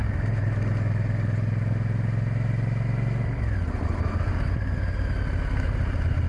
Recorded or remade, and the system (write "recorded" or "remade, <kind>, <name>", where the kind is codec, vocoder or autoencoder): recorded